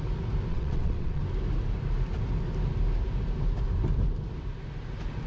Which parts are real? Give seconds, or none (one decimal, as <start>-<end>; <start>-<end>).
0.0-0.5; 1.2-5.3